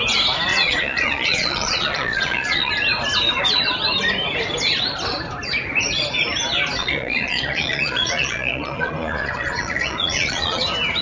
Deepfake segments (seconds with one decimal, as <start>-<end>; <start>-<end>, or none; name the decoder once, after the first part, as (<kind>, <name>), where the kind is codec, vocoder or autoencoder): 0.5-2.7 (vocoder, Vocos); 6.8-10.6